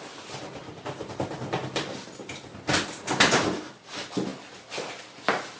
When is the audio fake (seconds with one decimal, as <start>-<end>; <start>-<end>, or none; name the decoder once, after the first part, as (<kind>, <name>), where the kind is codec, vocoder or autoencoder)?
none